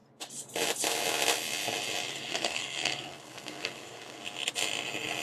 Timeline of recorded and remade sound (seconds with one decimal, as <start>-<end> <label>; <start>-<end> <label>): 0.0-2.1 recorded; 2.1-4.2 remade; 4.2-5.2 recorded